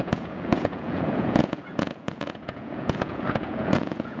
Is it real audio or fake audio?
fake